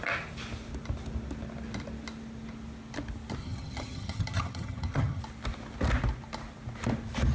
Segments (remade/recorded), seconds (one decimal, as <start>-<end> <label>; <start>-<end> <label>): 0.0-3.4 recorded; 3.4-5.2 remade; 5.2-7.3 recorded

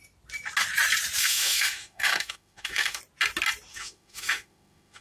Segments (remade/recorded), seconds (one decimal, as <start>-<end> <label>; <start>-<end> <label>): 0.0-1.2 recorded; 1.2-3.0 remade; 3.0-3.7 recorded; 3.7-5.0 remade

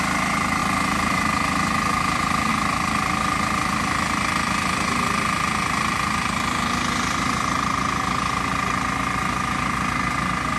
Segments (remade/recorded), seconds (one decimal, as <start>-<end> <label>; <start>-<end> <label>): 0.0-10.6 recorded

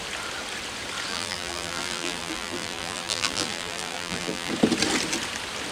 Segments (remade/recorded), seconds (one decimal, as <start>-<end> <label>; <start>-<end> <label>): 0.0-1.1 recorded; 1.1-4.5 remade; 4.5-5.7 recorded

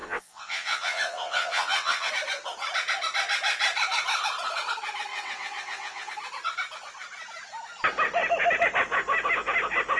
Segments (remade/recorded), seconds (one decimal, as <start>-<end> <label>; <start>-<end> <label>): 0.0-2.1 remade; 2.1-5.1 recorded; 5.1-6.1 remade; 6.1-10.0 recorded

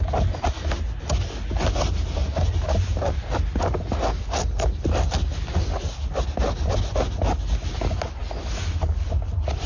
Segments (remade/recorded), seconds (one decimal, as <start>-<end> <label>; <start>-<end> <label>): 0.0-9.7 recorded